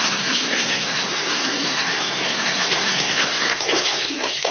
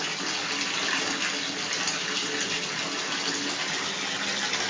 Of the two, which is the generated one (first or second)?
first